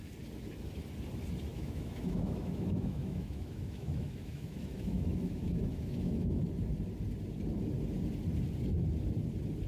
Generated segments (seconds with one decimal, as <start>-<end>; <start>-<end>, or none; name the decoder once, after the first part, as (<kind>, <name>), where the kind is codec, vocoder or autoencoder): 1.5-6.4 (autoencoder, DAC-VAE)